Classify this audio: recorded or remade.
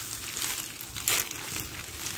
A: recorded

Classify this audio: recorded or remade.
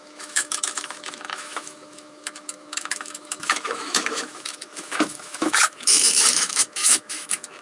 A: remade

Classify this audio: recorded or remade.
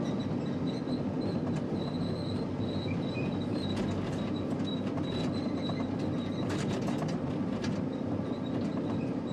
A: recorded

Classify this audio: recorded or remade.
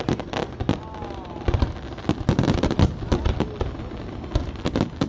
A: recorded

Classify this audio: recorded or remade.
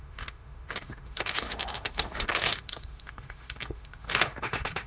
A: remade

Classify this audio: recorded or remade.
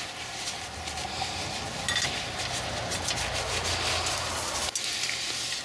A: recorded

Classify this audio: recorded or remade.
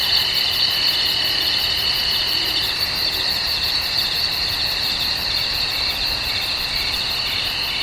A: recorded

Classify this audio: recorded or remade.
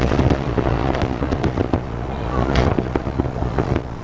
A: remade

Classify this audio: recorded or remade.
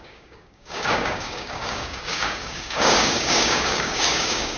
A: remade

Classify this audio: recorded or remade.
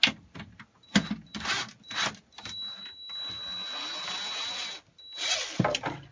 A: recorded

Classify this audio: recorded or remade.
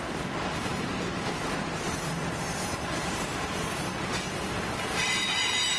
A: recorded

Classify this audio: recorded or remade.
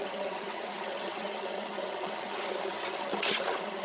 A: remade